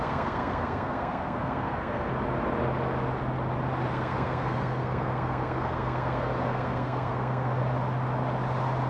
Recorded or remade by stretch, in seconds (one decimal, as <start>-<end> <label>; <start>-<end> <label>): 0.0-2.1 remade; 2.1-3.9 recorded; 3.9-7.6 remade; 7.6-8.9 recorded